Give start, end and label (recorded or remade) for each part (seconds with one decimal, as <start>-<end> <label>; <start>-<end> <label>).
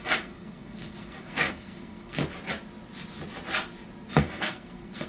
0.0-2.2 remade; 2.2-4.1 recorded; 4.1-5.1 remade